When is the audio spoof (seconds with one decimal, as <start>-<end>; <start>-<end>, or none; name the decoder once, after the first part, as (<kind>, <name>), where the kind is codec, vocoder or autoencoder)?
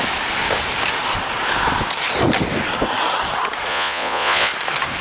3.7-4.5 (vocoder, Vocos)